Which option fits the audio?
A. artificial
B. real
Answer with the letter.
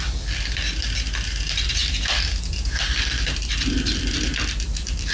A